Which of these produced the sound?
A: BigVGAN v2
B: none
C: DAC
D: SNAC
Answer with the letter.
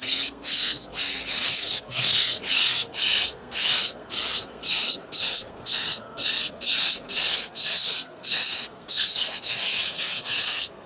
D